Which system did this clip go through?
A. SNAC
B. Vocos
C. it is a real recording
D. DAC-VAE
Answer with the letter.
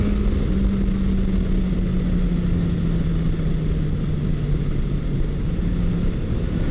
C